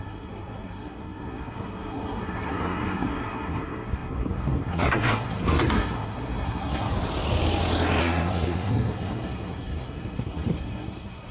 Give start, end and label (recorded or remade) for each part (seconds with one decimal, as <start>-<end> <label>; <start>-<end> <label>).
0.0-6.9 remade; 6.9-8.0 recorded; 8.0-11.3 remade